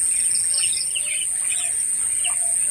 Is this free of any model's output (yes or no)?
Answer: yes